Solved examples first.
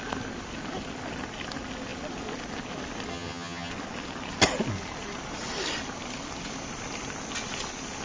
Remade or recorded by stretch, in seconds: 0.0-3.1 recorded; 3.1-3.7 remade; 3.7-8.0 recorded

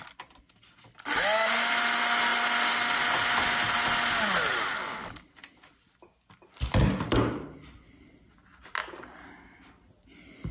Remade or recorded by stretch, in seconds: 0.0-10.5 recorded

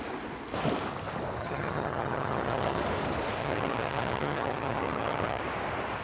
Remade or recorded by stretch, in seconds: 0.0-1.4 recorded; 1.4-2.8 remade; 2.8-3.4 recorded; 3.4-5.4 remade; 5.4-6.0 recorded

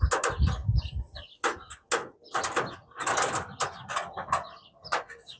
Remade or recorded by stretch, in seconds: 0.0-5.4 recorded